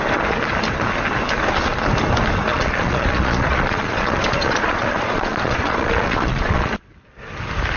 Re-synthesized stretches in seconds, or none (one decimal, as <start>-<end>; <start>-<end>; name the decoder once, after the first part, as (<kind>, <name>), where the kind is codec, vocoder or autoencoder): 2.5-6.7 (vocoder, Vocos)